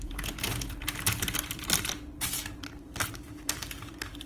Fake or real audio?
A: fake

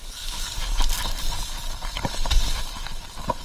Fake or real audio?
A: real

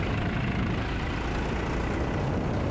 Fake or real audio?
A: real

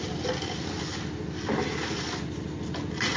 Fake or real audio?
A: real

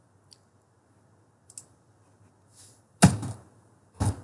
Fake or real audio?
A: real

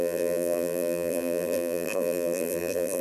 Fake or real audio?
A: fake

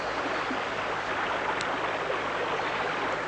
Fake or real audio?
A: real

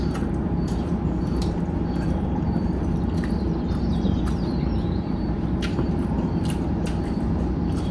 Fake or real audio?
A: fake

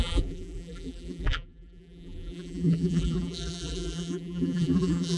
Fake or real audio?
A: fake